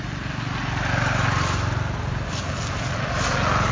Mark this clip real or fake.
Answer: real